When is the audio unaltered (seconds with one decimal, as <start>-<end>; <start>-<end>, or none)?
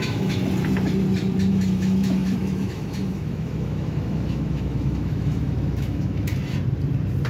0.4-1.5; 6.3-7.3